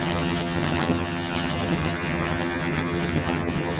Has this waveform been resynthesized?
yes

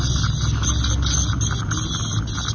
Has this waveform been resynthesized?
no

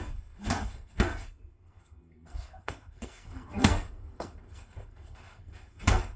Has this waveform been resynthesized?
yes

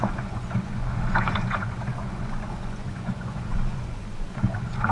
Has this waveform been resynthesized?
yes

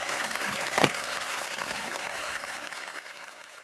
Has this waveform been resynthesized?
yes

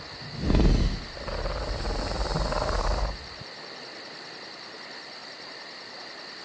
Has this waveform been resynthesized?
no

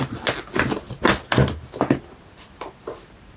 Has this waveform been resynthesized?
no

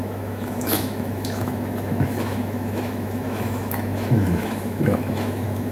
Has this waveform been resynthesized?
yes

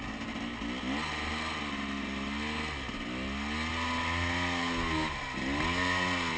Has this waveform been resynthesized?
no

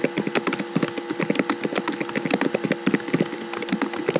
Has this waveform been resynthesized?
no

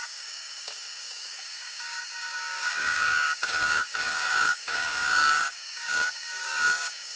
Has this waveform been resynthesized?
yes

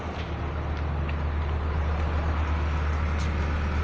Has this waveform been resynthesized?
no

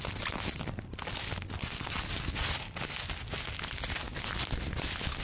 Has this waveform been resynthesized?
no